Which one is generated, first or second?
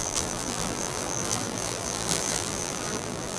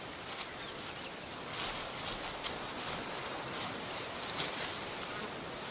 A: first